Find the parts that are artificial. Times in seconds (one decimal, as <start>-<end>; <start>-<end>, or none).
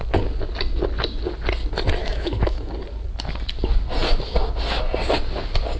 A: 2.0-2.7